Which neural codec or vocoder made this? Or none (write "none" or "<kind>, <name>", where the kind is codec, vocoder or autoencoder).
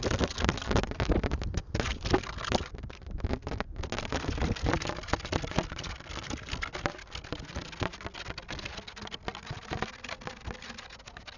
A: none